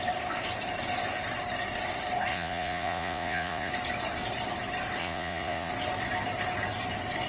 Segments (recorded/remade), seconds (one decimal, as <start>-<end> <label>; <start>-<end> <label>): 0.0-2.3 recorded; 2.3-3.7 remade; 3.7-5.0 recorded; 5.0-5.7 remade; 5.7-7.3 recorded